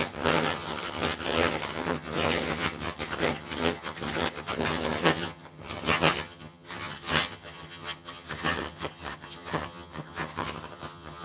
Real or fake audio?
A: fake